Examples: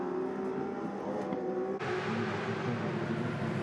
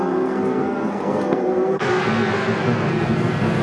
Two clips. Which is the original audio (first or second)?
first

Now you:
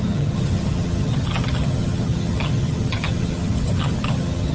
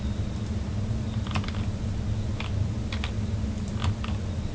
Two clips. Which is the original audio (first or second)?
second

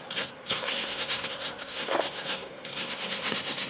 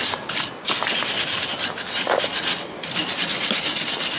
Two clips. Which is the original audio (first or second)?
second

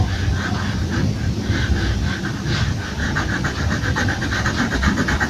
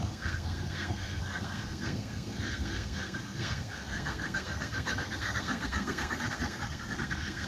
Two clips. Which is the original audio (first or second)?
first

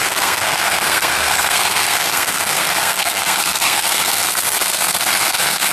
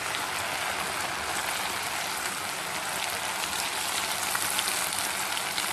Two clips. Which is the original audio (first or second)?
second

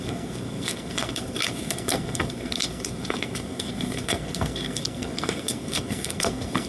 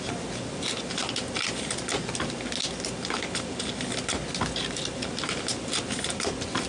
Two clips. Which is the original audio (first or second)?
second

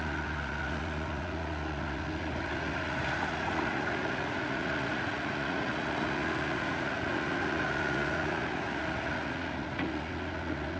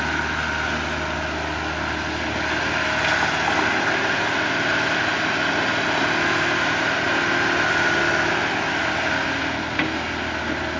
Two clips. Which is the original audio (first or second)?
second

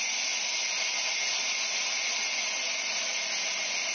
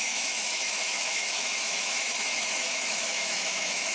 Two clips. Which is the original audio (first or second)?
first